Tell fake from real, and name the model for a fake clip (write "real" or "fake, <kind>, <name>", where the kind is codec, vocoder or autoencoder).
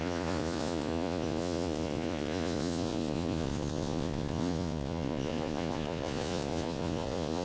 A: fake, vocoder, Vocos